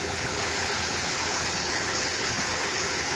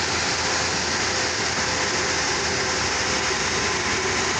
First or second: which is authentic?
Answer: second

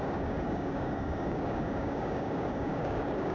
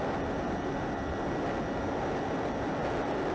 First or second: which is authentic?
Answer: second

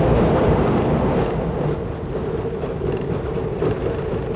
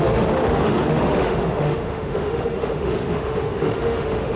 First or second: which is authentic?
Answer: first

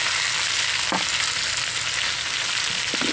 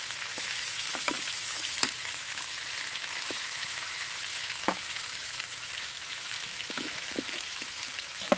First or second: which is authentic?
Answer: first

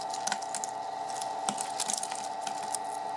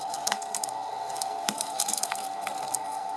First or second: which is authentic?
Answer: first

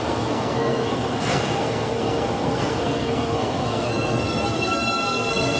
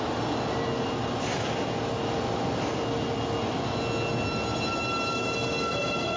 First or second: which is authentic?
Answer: second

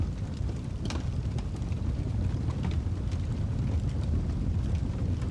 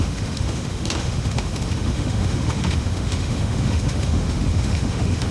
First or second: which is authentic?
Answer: first